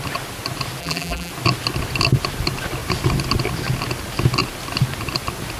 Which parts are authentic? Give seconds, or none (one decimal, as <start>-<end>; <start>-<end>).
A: 0.0-0.8; 1.3-5.6